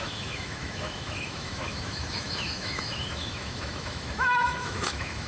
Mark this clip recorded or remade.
remade